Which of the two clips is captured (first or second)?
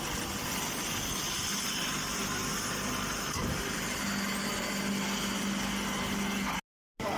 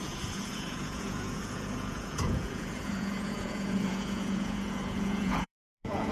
first